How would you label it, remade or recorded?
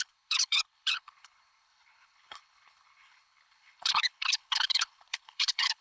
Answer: remade